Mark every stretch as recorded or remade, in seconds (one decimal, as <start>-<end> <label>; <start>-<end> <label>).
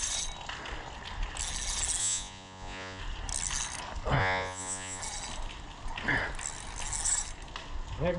0.0-2.0 recorded; 2.0-3.0 remade; 3.0-4.2 recorded; 4.2-5.0 remade; 5.0-8.2 recorded